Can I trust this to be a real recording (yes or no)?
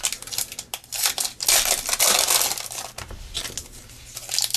yes